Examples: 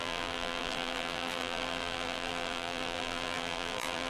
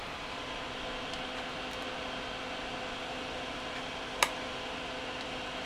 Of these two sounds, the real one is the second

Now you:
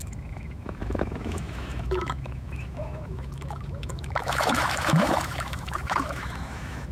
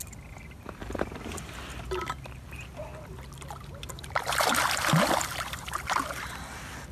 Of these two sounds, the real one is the second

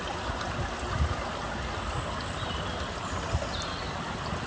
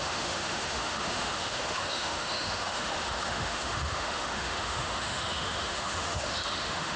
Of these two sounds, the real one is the first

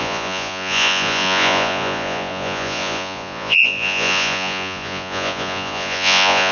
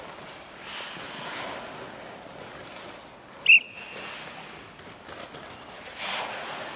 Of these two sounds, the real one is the second